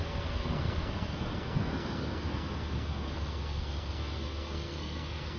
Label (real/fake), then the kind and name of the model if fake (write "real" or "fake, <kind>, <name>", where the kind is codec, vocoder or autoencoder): fake, codec, SNAC